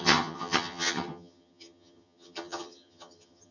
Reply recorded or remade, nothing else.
remade